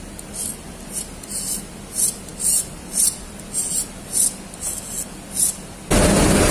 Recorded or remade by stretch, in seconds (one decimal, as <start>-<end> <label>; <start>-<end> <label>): 0.0-6.5 recorded